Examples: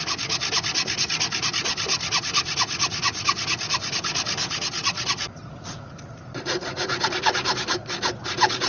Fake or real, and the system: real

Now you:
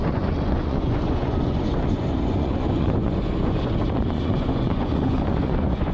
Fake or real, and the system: fake, vocoder, Vocos